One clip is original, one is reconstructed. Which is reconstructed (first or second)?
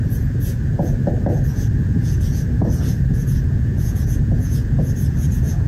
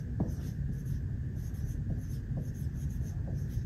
first